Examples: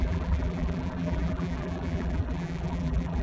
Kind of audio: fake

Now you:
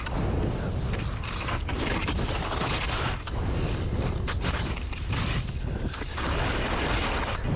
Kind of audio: real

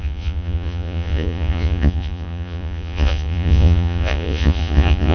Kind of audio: fake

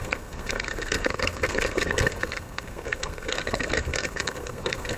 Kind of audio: fake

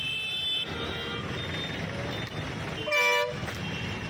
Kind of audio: real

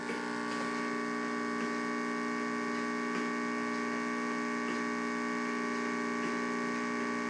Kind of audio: real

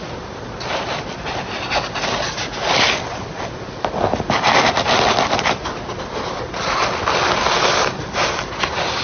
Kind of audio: real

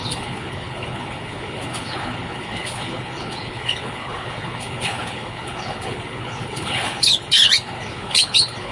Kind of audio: fake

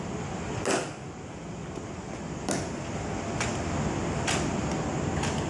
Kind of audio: real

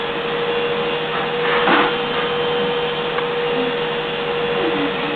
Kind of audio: real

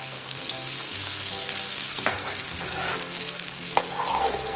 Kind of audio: fake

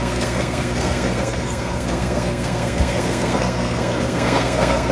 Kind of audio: fake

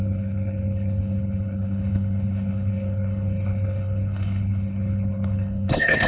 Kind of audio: fake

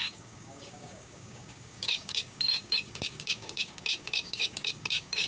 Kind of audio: fake